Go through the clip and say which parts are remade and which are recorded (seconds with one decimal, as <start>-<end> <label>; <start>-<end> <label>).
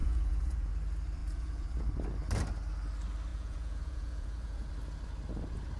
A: 0.0-0.7 remade; 0.7-1.2 recorded; 1.2-1.8 remade; 1.8-3.3 recorded; 3.3-4.7 remade; 4.7-5.8 recorded